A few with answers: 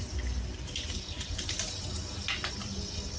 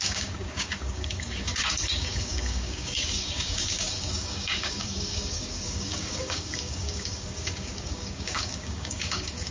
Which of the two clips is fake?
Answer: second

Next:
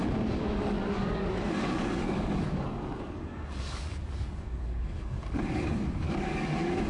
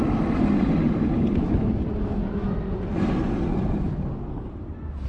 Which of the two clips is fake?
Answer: first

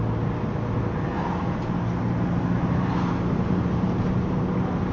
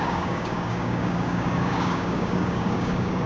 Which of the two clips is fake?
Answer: second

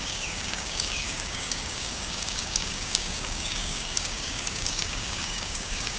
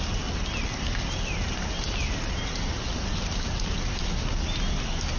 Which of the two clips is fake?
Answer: first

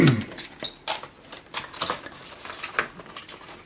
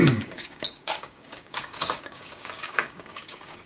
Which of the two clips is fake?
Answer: second